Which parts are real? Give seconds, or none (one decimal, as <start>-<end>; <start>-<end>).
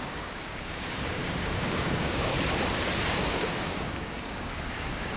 2.3-3.1